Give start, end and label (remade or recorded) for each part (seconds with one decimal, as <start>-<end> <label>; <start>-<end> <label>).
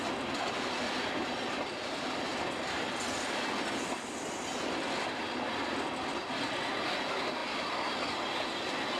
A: 0.0-2.3 recorded; 2.3-6.1 remade; 6.1-7.4 recorded; 7.4-9.0 remade